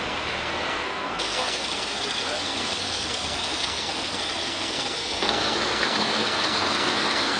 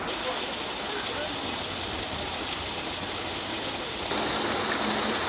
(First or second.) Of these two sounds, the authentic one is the second